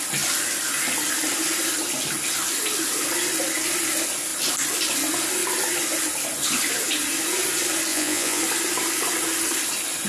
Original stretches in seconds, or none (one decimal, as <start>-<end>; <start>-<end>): 0.0-7.9; 8.4-10.1